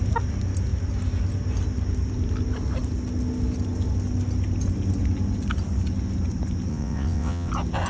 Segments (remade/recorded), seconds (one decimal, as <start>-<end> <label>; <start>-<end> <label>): 0.0-6.7 recorded; 6.7-7.5 remade; 7.5-7.9 recorded